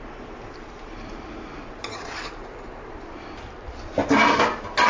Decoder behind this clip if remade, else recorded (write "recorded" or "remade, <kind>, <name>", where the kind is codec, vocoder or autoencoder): recorded